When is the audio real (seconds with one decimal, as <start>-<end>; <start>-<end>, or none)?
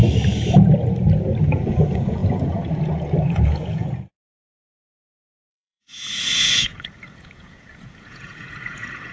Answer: 0.0-1.4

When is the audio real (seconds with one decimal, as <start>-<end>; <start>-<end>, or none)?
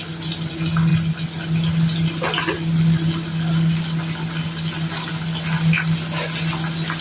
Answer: 0.0-7.0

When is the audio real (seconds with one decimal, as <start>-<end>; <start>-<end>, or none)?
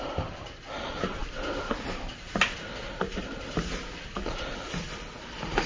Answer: 0.0-5.7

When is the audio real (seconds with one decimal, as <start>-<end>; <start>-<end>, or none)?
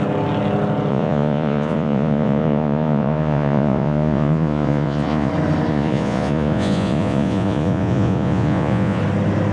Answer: 0.0-0.9; 5.3-5.7; 9.0-9.5